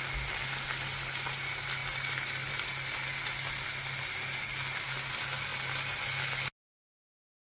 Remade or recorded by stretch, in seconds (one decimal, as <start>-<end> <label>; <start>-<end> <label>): 0.0-7.4 recorded